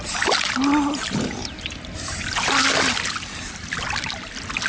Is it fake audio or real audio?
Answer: real